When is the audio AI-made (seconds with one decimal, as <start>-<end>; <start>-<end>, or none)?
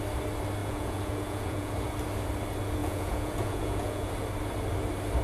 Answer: 0.6-1.7; 2.8-4.1